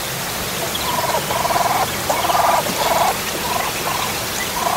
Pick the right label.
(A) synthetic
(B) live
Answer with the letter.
B